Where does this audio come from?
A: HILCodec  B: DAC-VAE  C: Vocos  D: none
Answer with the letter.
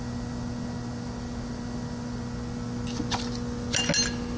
D